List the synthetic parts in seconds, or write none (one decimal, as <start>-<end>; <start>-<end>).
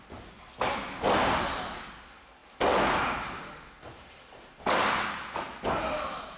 none